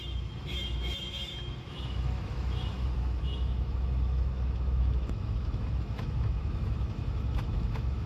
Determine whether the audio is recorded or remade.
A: remade